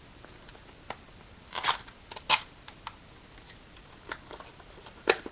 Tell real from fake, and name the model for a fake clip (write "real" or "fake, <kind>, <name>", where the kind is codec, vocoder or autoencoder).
real